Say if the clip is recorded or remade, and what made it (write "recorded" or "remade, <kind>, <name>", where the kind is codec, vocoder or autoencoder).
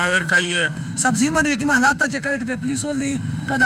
remade, autoencoder, DAC-VAE